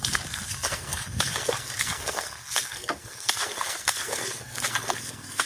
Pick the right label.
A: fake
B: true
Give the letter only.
A